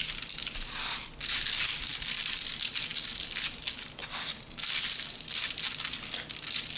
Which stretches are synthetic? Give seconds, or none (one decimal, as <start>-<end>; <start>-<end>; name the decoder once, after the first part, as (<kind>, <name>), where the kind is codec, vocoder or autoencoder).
none